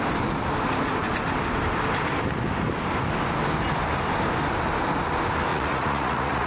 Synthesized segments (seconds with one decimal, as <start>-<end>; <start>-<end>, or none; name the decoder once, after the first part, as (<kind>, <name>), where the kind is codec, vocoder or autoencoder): 5.5-6.5 (vocoder, Vocos)